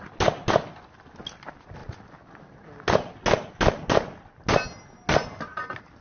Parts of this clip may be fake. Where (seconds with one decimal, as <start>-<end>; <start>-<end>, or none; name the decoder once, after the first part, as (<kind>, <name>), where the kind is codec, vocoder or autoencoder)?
none